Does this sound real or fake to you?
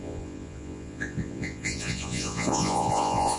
fake